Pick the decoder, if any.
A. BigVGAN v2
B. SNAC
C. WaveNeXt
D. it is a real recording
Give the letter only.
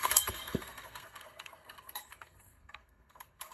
B